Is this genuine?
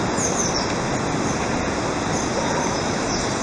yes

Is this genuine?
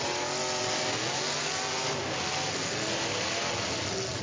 yes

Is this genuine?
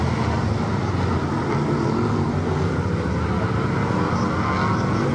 yes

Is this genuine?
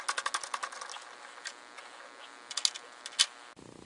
yes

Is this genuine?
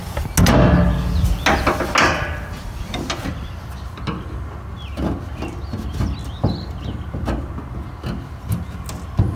yes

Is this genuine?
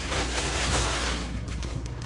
no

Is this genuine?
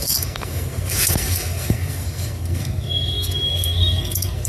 no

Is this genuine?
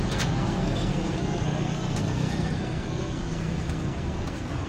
no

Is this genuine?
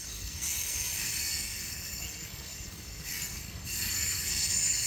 no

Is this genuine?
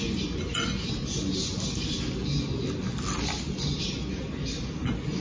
yes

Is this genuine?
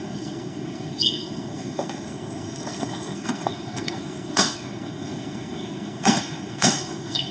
no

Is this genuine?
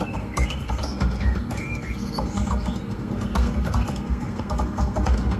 no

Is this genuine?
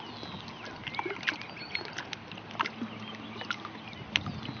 yes